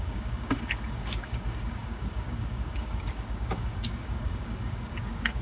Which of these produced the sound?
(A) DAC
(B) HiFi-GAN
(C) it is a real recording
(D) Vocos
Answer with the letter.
A